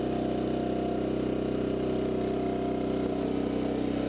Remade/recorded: recorded